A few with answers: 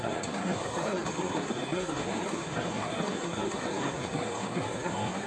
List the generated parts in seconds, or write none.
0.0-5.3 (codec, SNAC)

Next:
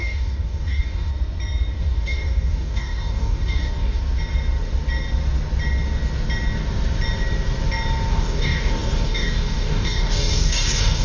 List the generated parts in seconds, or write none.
0.0-1.1 (codec, DAC); 1.8-4.0; 8.1-11.0

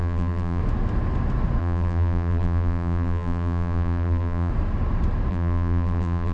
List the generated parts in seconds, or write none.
0.0-0.6 (vocoder, BigVGAN v2); 1.6-4.5; 5.3-6.3

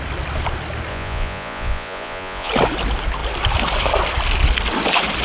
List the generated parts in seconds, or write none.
0.9-2.5 (vocoder, Vocos)

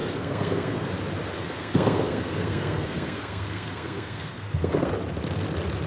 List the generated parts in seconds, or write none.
0.0-0.9 (codec, SNAC); 1.4-4.9